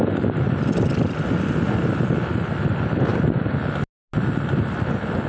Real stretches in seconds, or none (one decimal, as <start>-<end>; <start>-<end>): 0.0-5.3